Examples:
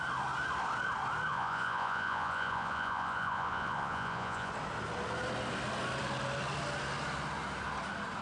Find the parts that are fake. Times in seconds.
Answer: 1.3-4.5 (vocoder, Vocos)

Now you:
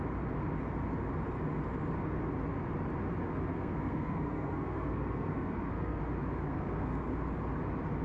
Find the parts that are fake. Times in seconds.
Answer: 3.5-6.0 (codec, SNAC); 6.4-7.1